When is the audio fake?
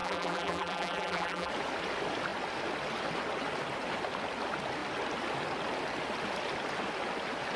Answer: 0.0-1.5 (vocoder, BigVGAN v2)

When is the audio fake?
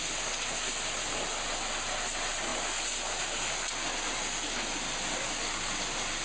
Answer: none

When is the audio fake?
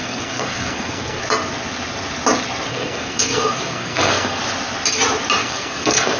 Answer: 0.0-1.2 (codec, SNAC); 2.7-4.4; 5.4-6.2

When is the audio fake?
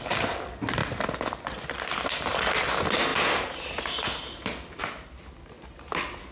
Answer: none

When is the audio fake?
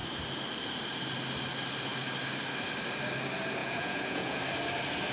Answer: 3.6-4.4 (vocoder, Vocos)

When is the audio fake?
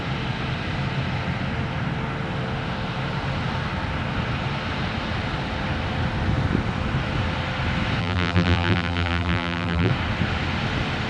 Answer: 8.0-9.9 (vocoder, BigVGAN v2)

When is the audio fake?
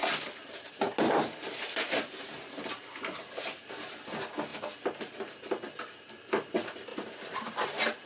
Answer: 6.9-8.1 (vocoder, BigVGAN v2)